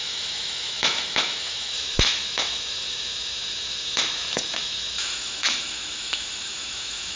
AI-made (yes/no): yes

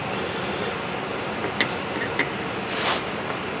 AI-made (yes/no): no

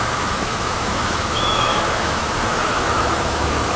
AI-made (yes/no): yes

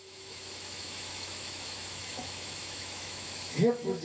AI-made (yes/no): yes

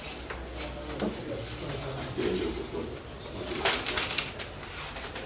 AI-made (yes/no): no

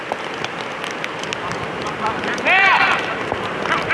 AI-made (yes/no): no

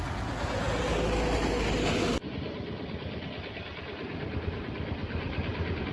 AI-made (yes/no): no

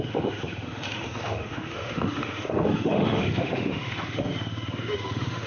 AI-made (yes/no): yes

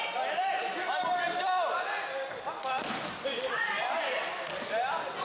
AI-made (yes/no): no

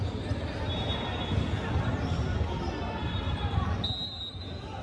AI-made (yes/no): no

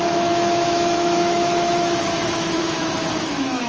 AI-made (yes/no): yes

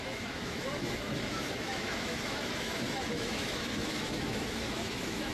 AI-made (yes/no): yes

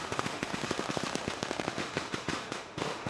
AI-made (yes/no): yes